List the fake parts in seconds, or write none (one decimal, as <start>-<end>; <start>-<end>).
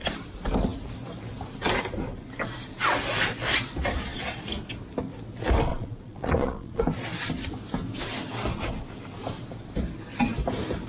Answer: 5.7-6.8